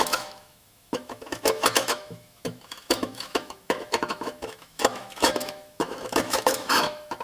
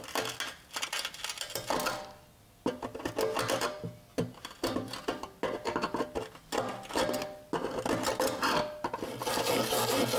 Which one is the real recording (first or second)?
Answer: second